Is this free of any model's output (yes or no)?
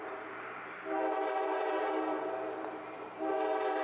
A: yes